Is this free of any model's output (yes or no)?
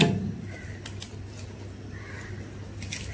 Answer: yes